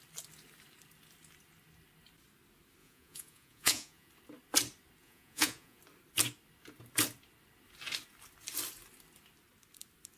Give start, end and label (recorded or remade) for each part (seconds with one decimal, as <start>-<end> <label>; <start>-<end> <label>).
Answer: 0.0-2.8 recorded; 2.8-4.1 remade; 4.1-5.0 recorded; 5.0-5.8 remade; 5.8-10.2 recorded